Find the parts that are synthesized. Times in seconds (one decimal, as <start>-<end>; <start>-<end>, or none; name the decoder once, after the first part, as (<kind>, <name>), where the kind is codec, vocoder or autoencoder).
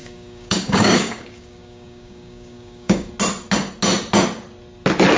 0.0-3.1 (codec, DAC)